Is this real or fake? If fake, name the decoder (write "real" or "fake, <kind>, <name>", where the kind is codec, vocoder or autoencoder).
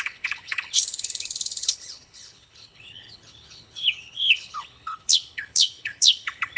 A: fake, codec, HILCodec